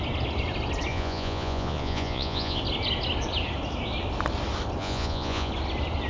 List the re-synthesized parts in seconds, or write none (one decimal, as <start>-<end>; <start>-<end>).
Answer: 0.9-2.6; 4.8-5.5

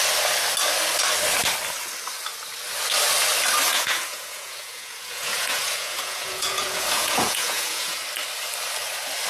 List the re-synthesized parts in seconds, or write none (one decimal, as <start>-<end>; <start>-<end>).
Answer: 3.7-8.0

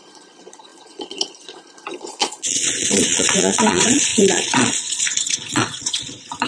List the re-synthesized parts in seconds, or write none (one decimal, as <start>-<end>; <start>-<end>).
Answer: 0.0-6.5